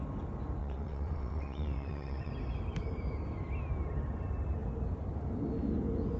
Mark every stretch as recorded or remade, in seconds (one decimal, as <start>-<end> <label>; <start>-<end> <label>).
0.0-0.6 recorded; 0.6-2.3 remade; 2.3-6.2 recorded